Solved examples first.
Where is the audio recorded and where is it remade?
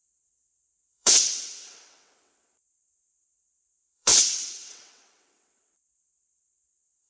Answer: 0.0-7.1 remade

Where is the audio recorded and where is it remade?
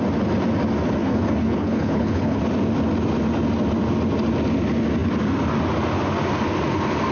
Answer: 0.0-1.0 recorded; 1.0-2.4 remade; 2.4-7.1 recorded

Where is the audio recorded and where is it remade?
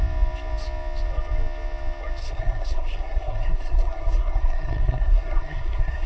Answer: 0.0-2.2 recorded; 2.2-6.1 remade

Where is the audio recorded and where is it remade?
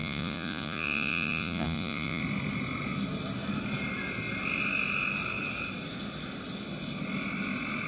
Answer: 0.0-2.2 remade; 2.2-7.9 recorded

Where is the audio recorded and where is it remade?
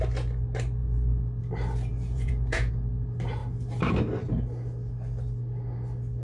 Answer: 0.0-1.9 recorded; 1.9-2.7 remade; 2.7-6.2 recorded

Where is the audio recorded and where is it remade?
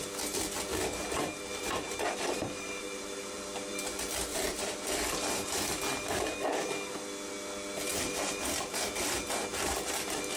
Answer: 0.0-0.7 recorded; 0.7-5.8 remade; 5.8-7.9 recorded; 7.9-9.7 remade; 9.7-10.4 recorded